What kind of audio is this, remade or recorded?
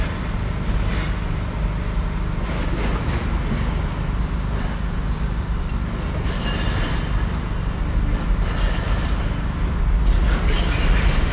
recorded